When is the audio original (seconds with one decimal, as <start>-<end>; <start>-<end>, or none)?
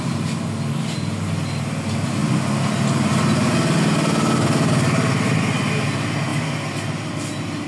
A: 0.0-7.7